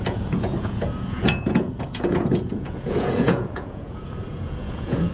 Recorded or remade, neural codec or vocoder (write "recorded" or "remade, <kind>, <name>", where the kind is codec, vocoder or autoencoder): remade, vocoder, Vocos